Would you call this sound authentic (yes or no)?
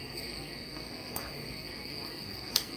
no